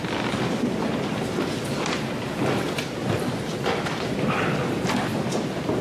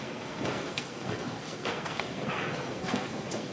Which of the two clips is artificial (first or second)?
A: second